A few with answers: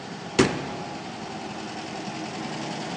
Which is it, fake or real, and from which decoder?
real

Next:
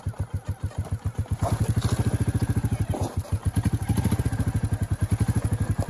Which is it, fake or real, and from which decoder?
real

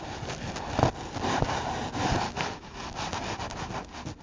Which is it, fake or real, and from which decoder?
real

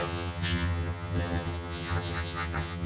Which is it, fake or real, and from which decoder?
fake, vocoder, HiFi-GAN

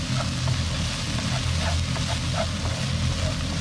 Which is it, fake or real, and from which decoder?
real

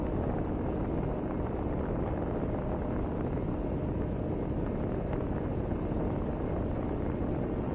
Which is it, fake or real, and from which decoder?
fake, vocoder, BigVGAN v2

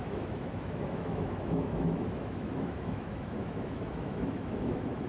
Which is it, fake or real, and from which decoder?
fake, autoencoder, DAC-VAE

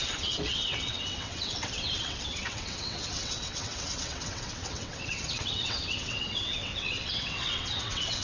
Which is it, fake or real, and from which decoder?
fake, vocoder, WaveNeXt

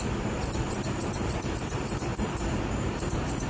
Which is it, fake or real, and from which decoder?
fake, vocoder, BigVGAN v2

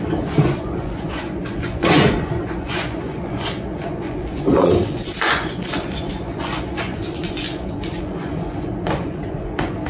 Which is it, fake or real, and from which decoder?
fake, vocoder, Vocos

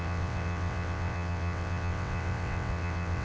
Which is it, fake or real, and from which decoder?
fake, vocoder, WaveNeXt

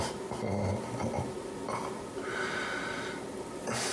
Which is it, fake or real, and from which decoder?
real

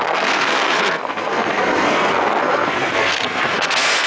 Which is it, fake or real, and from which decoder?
fake, codec, SNAC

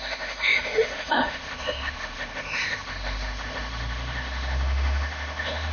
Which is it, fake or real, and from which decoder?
fake, autoencoder, DAC-VAE